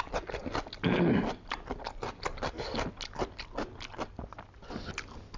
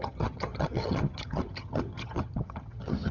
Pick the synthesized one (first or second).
second